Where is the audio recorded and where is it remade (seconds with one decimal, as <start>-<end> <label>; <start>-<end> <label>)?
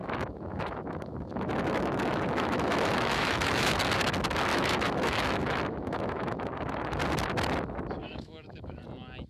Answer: 0.0-3.8 remade; 3.8-4.5 recorded; 4.5-7.0 remade; 7.0-8.0 recorded; 8.0-8.8 remade; 8.8-9.3 recorded